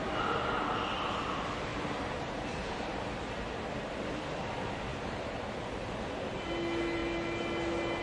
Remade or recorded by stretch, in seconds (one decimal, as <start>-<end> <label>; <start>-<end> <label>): 0.0-1.7 recorded; 1.7-3.1 remade; 3.1-4.9 recorded; 4.9-6.0 remade; 6.0-8.0 recorded